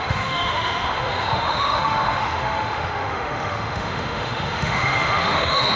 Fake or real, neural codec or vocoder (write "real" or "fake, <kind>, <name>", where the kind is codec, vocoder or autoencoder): fake, autoencoder, DAC-VAE